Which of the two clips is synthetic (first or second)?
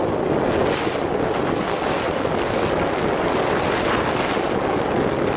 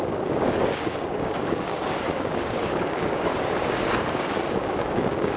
second